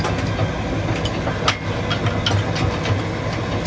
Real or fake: real